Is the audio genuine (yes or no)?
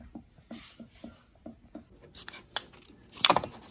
yes